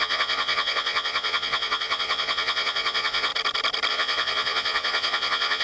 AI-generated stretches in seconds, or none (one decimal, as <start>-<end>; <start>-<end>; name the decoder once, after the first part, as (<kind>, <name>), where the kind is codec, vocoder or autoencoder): 0.0-3.3 (vocoder, Vocos); 3.9-5.6